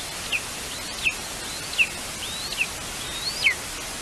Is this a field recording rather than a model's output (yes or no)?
yes